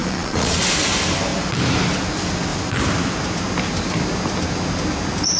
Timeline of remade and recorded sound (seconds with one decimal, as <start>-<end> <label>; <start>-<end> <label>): 0.0-0.6 remade; 0.6-5.4 recorded